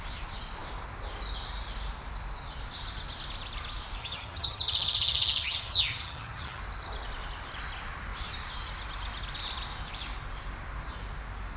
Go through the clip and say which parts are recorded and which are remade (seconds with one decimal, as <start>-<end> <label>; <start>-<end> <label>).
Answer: 0.0-4.0 recorded; 4.0-6.6 remade; 6.6-11.6 recorded